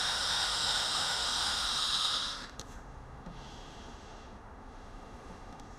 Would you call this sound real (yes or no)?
no